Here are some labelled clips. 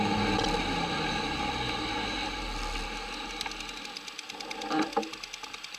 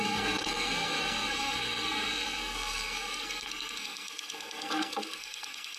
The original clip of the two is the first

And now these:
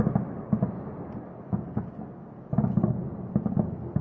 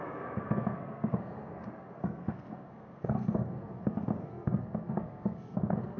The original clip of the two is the first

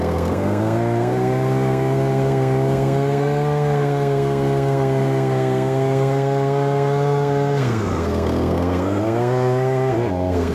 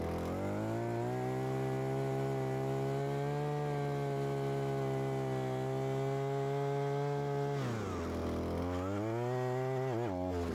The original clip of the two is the second